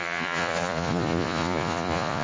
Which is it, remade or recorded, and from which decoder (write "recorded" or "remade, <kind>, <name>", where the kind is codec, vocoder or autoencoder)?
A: remade, vocoder, Vocos